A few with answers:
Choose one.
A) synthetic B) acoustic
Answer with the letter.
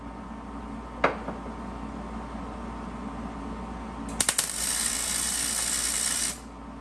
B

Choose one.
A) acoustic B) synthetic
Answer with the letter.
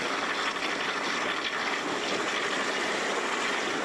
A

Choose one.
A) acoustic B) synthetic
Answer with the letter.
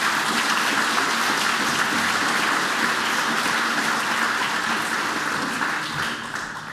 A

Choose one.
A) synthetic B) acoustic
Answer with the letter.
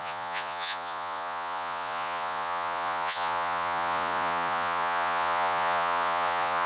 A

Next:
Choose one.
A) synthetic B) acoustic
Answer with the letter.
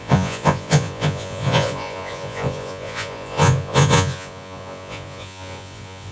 A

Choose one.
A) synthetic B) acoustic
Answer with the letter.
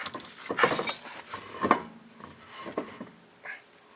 B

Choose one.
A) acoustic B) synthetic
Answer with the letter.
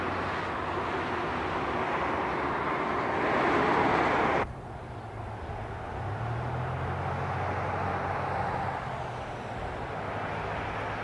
A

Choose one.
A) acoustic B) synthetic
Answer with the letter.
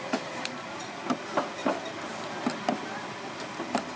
A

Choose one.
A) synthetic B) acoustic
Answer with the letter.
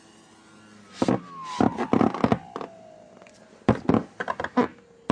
B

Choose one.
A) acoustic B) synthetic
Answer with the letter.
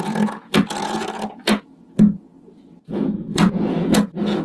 B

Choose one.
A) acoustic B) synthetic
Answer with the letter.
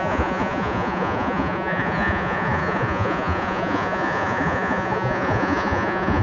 B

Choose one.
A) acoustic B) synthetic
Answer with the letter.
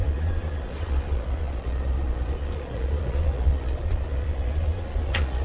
B